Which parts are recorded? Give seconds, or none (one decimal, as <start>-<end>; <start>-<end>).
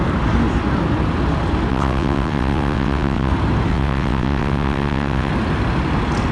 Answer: 0.0-1.7; 3.3-3.7; 5.3-6.3